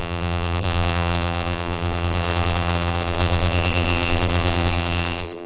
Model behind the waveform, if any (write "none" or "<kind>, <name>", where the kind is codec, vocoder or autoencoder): vocoder, BigVGAN v2